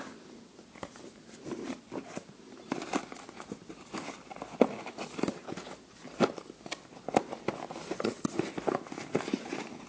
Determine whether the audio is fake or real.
real